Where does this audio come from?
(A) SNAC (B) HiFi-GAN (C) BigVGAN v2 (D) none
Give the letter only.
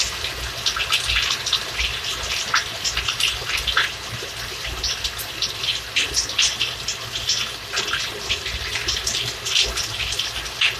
D